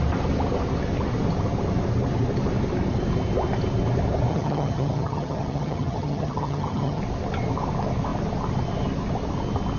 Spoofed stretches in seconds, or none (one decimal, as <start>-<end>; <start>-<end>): 4.3-7.0